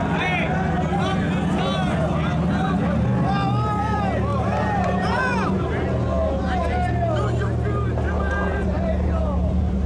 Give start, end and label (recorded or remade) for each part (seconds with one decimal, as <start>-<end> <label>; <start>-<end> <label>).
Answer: 0.0-4.3 recorded; 4.3-5.2 remade; 5.2-8.5 recorded; 8.5-9.9 remade